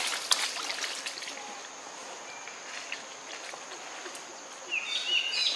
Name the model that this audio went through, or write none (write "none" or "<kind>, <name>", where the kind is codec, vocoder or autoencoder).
none